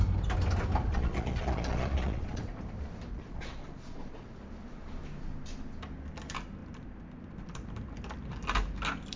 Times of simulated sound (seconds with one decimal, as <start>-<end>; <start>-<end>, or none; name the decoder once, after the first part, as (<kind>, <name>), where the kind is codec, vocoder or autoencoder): 0.9-2.4 (vocoder, Vocos); 3.1-4.4